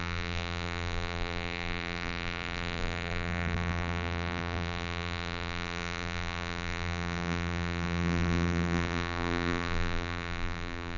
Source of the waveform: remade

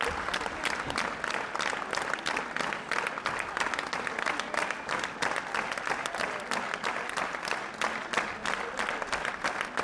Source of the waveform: recorded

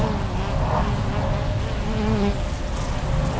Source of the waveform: recorded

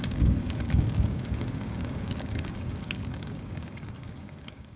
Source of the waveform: remade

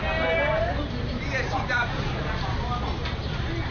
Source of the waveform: recorded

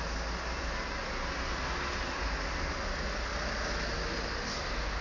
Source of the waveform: recorded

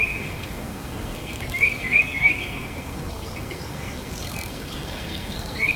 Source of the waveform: remade